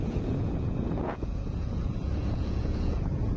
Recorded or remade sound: remade